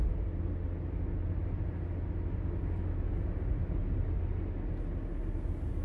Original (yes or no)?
yes